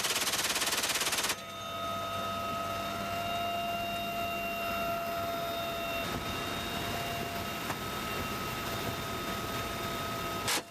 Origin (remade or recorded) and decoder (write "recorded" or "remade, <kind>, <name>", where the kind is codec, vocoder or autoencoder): recorded